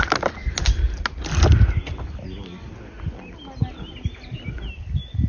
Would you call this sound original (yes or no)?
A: yes